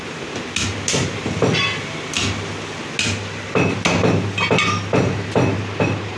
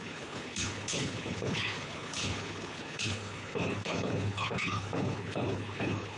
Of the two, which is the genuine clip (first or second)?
first